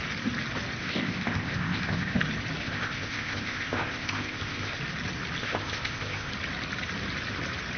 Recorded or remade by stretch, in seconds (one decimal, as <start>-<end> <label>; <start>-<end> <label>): 0.0-0.8 recorded; 0.8-2.2 remade; 2.2-2.6 recorded; 2.6-4.8 remade; 4.8-5.4 recorded; 5.4-6.3 remade; 6.3-7.8 recorded